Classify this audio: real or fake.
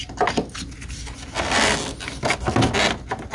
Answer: real